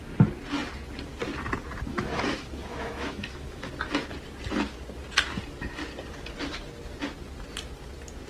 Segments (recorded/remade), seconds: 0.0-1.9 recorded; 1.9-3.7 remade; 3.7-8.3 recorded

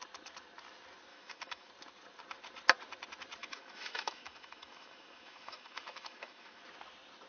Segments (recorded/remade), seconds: 0.0-1.1 recorded; 1.1-1.7 remade; 1.7-3.4 recorded; 3.4-6.6 remade; 6.6-7.3 recorded